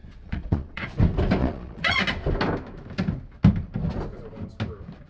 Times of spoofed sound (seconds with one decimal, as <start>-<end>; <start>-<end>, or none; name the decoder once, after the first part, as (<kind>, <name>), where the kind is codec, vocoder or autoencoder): 0.0-0.8 (vocoder, Vocos); 1.4-2.0